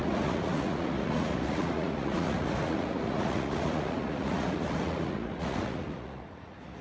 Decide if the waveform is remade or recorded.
remade